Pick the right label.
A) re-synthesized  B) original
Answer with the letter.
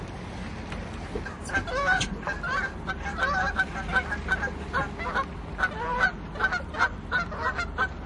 B